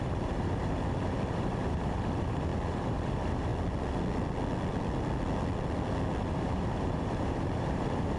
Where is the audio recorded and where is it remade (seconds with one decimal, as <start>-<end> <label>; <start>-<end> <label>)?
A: 0.0-3.5 remade; 3.5-6.2 recorded; 6.2-8.2 remade